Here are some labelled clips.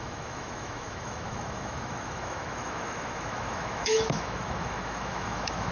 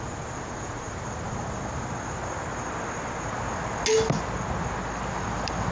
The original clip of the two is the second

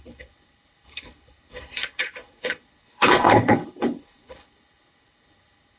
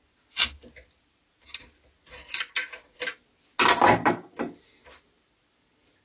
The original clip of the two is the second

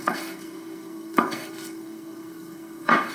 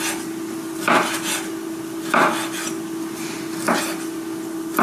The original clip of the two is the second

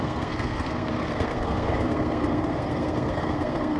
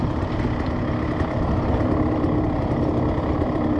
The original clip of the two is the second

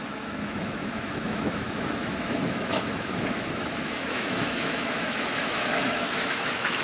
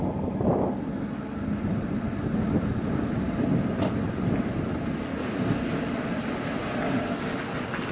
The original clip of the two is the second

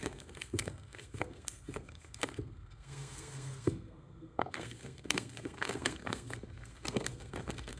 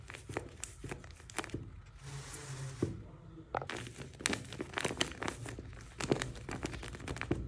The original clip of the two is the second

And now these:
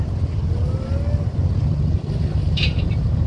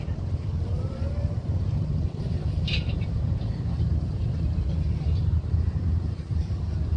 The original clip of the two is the first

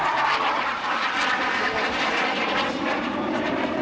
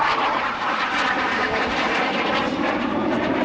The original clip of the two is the first